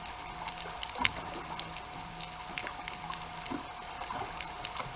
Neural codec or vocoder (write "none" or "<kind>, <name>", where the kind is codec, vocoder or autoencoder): none